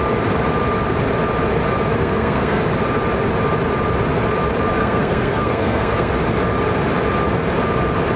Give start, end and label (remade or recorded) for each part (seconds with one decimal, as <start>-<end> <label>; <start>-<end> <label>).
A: 0.0-1.9 recorded; 1.9-2.6 remade; 2.6-4.8 recorded; 4.8-6.1 remade; 6.1-8.2 recorded